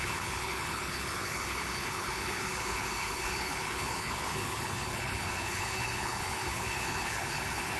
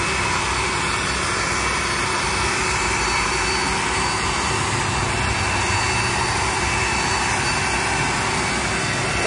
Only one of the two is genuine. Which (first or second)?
second